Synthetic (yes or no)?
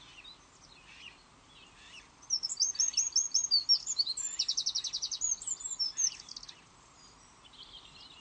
no